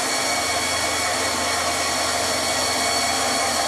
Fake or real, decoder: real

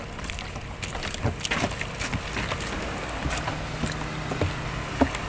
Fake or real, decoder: real